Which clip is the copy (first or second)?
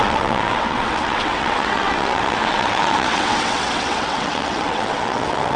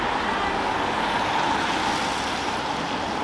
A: first